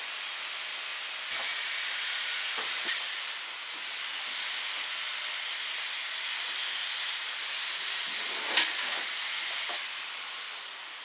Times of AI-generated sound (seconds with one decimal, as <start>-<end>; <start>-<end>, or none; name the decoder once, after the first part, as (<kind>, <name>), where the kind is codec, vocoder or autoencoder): 1.5-2.5 (vocoder, Vocos)